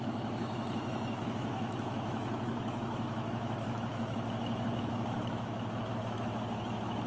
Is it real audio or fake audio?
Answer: fake